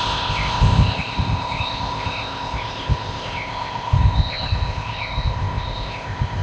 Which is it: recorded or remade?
remade